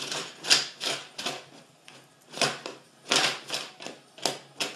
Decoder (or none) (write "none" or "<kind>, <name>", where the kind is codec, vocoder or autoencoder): none